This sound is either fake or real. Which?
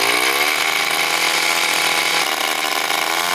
real